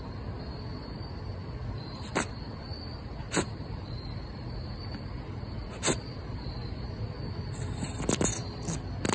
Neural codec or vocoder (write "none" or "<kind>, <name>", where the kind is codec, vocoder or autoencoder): none